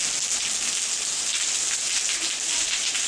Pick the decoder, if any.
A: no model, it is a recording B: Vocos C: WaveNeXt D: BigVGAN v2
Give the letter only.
A